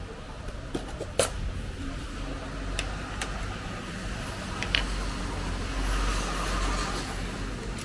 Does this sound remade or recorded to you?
recorded